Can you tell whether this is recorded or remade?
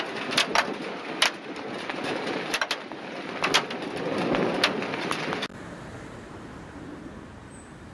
recorded